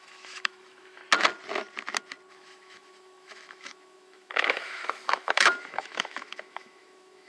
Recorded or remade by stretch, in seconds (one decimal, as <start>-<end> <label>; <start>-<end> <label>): 0.0-1.0 remade; 1.0-2.3 recorded; 2.3-7.3 remade